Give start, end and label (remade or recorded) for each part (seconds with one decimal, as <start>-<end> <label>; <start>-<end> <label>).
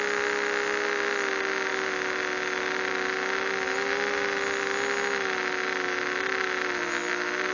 0.0-7.5 recorded